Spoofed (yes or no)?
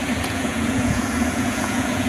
yes